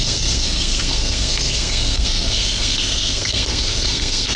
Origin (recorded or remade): remade